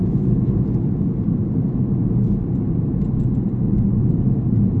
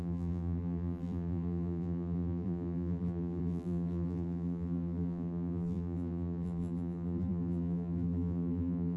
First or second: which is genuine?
first